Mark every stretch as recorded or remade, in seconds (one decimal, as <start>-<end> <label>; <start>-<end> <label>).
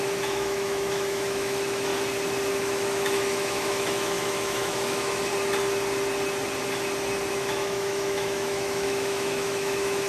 0.0-1.9 remade; 1.9-2.5 recorded; 2.5-5.3 remade; 5.3-7.3 recorded; 7.3-10.1 remade